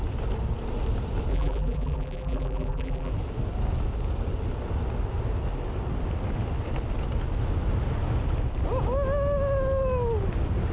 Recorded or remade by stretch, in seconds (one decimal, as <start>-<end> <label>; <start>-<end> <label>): 0.0-1.3 recorded; 1.3-3.1 remade; 3.1-10.7 recorded